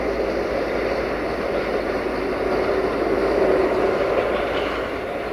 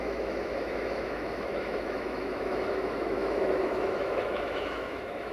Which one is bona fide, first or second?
first